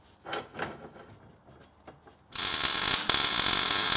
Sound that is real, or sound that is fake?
real